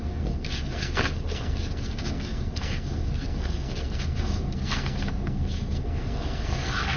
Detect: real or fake fake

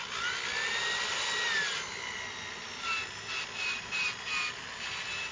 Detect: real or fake real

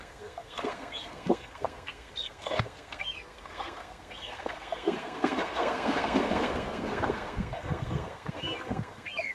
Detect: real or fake fake